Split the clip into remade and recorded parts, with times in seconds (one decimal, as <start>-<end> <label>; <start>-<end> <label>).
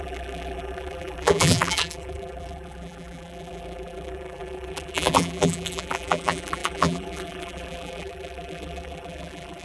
0.0-9.6 remade